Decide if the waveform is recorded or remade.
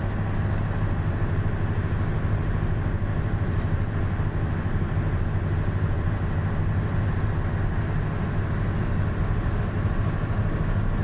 recorded